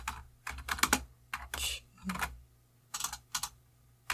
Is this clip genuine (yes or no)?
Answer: yes